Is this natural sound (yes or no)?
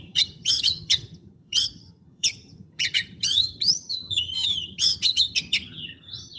no